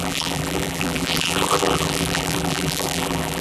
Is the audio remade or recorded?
remade